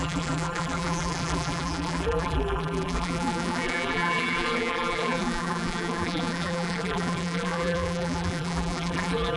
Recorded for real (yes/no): no